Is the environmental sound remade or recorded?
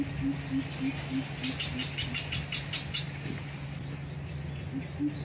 recorded